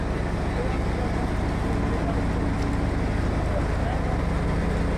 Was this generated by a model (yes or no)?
no